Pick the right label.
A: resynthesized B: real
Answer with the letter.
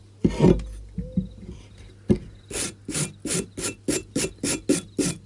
B